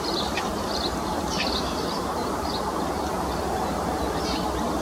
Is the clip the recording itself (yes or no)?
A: no